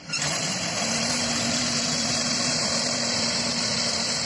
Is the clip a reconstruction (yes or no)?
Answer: yes